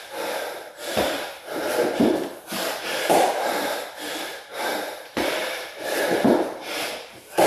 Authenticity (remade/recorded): remade